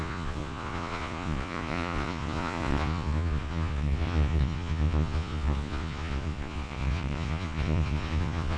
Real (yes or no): no